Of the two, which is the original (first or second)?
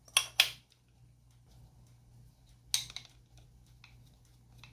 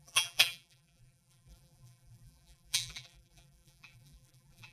first